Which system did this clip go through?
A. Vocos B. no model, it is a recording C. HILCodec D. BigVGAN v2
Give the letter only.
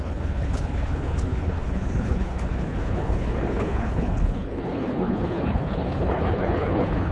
C